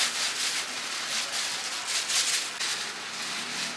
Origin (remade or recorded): recorded